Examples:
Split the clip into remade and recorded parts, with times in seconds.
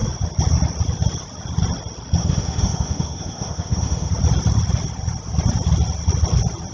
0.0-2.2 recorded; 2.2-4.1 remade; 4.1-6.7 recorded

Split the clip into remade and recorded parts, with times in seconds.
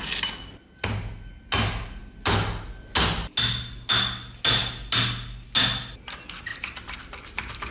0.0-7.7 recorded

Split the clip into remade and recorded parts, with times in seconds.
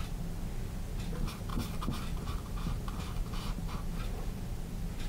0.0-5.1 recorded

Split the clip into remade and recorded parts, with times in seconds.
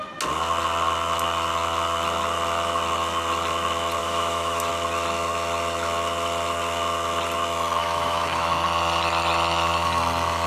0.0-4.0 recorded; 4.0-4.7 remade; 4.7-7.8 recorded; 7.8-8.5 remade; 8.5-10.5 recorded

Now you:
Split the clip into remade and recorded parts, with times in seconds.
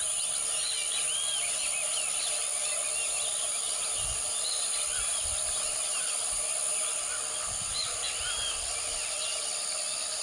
0.0-10.2 recorded